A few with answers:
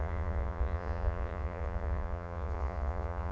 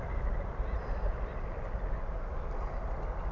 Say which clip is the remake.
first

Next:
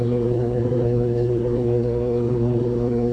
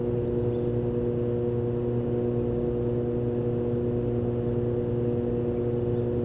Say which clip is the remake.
first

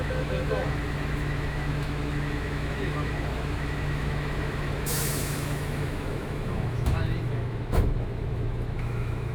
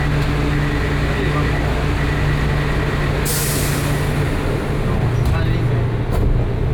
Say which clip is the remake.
first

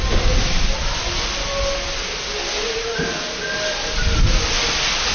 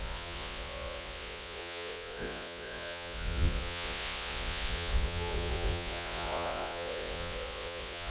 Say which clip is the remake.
second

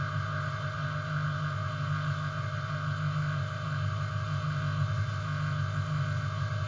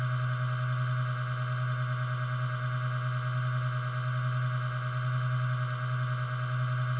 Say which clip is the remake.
first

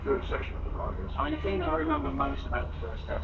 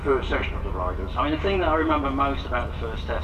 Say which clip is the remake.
first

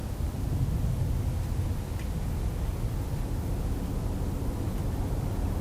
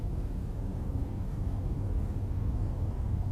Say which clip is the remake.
second